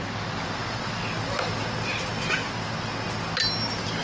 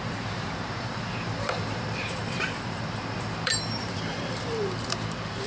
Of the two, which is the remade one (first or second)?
second